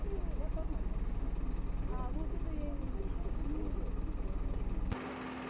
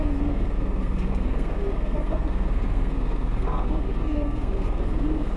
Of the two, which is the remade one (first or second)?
second